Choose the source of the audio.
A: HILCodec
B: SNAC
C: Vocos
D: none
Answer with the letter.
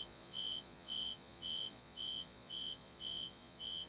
C